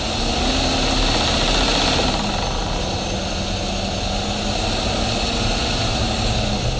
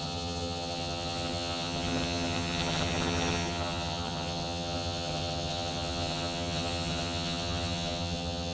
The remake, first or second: second